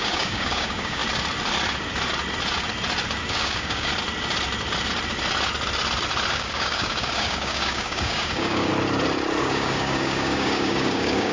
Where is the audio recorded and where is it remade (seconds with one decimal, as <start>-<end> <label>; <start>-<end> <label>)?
0.0-1.0 remade; 1.0-3.3 recorded; 3.3-3.9 remade; 3.9-6.3 recorded; 6.3-8.7 remade; 8.7-9.4 recorded; 9.4-11.3 remade